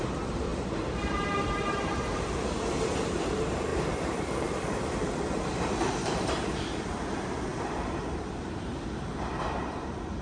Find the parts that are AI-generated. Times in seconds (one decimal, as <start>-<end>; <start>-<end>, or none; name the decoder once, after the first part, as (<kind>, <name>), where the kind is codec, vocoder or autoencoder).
0.0-10.2 (vocoder, BigVGAN v2)